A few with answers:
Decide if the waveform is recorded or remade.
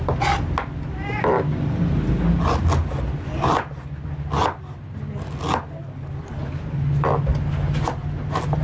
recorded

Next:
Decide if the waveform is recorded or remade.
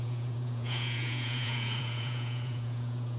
remade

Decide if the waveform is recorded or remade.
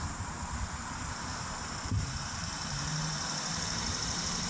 remade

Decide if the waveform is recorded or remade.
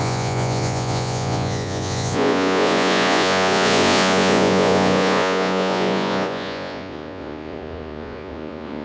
remade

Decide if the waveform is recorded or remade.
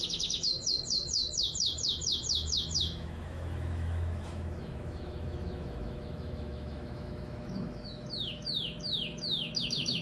remade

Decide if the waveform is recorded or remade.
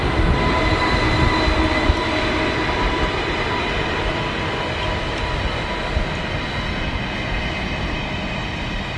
recorded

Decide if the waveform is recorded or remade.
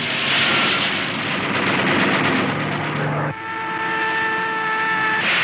recorded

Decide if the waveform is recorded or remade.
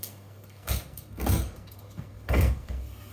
remade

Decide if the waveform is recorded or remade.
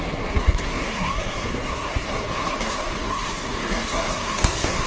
remade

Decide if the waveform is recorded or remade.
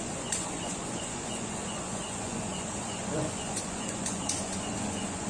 remade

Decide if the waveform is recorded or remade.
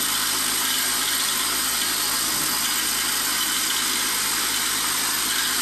recorded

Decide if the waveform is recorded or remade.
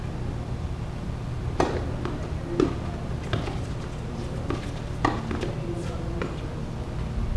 recorded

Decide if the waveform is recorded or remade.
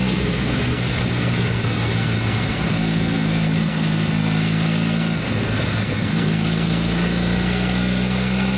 remade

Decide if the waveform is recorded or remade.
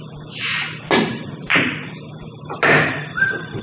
remade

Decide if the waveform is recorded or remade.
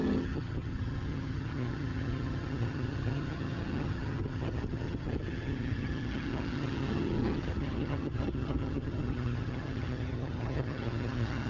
remade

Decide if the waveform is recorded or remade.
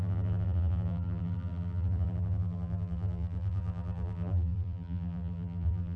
remade